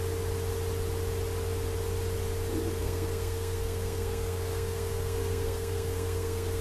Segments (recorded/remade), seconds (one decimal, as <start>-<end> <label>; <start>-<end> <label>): 0.0-2.8 recorded; 2.8-6.6 remade